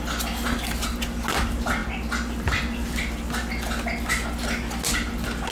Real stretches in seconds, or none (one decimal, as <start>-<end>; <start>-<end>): 0.0-5.5

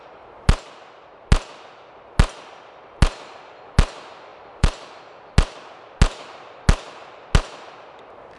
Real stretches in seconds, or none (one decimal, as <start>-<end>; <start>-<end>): 0.0-4.3; 5.0-8.4

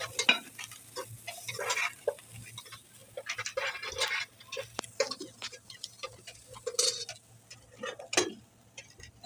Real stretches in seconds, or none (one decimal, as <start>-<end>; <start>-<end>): 0.0-9.3

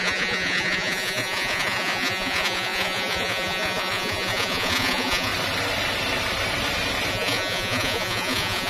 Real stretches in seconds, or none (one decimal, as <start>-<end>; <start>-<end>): 5.3-7.1

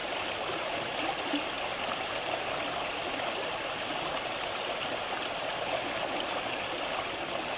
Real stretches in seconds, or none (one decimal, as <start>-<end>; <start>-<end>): 0.0-7.6

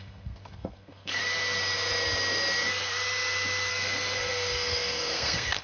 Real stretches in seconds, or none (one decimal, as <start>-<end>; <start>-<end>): 1.2-3.7

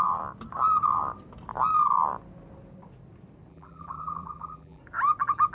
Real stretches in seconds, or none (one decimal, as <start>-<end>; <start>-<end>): 0.0-3.5; 4.8-5.5